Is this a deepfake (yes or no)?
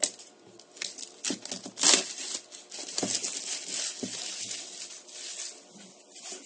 no